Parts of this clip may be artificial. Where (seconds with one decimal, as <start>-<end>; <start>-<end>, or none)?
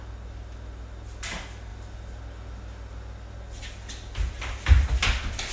none